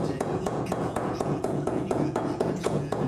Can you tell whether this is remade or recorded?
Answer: remade